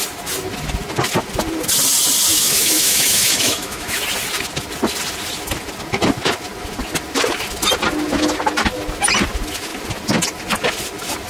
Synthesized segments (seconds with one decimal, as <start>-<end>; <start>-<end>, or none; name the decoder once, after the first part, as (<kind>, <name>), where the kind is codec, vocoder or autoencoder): 2.3-4.0 (autoencoder, DAC-VAE)